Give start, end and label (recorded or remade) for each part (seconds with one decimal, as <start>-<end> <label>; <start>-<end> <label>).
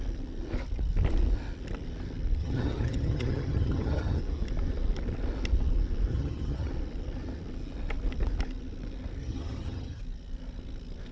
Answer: 0.0-2.4 recorded; 2.4-4.2 remade; 4.2-6.1 recorded; 6.1-6.7 remade; 6.7-9.2 recorded; 9.2-10.0 remade; 10.0-11.1 recorded